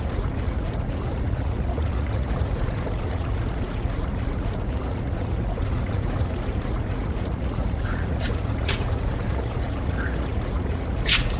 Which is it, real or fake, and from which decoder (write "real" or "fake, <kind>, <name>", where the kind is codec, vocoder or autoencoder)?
fake, vocoder, Vocos